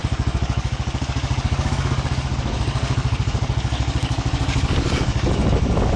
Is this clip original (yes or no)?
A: no